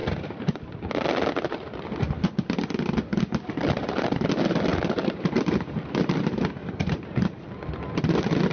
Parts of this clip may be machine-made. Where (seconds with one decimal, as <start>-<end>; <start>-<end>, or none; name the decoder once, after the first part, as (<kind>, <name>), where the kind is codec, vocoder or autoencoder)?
0.0-0.6 (vocoder, BigVGAN v2); 3.1-4.3; 4.7-5.4; 6.6-7.5